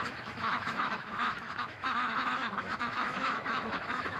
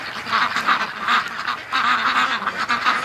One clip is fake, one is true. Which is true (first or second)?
second